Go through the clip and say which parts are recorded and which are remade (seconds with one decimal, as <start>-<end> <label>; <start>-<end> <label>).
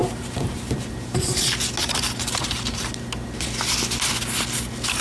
0.0-1.4 remade; 1.4-1.8 recorded; 1.8-2.9 remade; 2.9-5.0 recorded